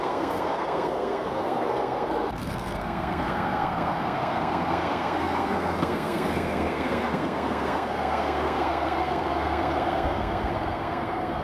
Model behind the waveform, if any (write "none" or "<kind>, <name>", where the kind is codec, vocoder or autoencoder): codec, SNAC